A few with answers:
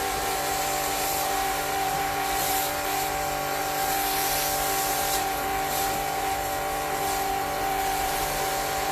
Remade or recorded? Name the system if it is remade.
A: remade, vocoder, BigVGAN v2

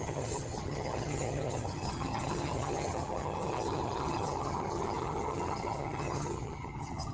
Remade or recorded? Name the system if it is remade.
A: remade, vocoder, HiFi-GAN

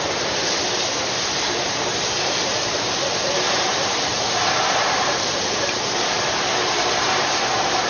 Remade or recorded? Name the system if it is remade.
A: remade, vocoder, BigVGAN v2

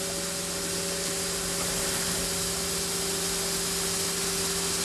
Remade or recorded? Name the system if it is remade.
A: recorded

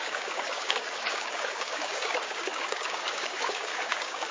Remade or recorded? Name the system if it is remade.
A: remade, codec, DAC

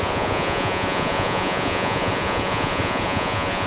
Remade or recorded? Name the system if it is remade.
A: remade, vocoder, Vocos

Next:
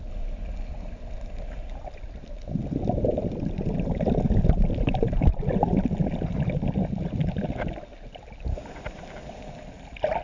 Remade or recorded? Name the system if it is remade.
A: recorded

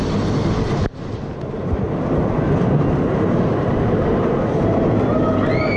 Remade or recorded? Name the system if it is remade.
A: recorded